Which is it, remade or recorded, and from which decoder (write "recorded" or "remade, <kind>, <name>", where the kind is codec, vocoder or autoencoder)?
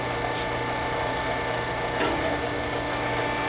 recorded